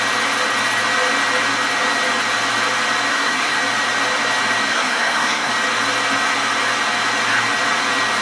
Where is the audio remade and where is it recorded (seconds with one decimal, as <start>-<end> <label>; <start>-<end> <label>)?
0.0-3.1 recorded; 3.1-3.6 remade; 3.6-4.7 recorded; 4.7-5.5 remade; 5.5-8.2 recorded